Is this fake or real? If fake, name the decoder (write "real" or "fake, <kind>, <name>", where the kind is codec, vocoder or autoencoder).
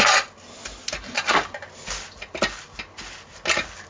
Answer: real